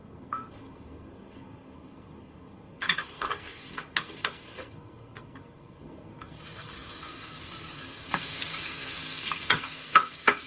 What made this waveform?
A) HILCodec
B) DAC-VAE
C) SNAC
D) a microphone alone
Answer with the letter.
C